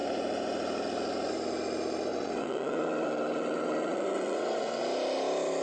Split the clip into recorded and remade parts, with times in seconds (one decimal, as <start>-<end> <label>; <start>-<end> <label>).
0.0-2.1 recorded; 2.1-4.8 remade; 4.8-5.6 recorded